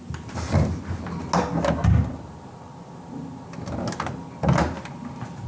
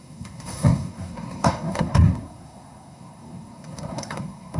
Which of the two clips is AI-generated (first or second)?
second